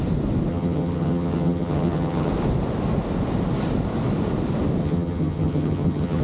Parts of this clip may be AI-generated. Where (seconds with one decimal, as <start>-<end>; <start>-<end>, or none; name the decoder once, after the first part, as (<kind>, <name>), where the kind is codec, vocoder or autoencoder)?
0.5-2.3 (vocoder, HiFi-GAN); 4.8-6.2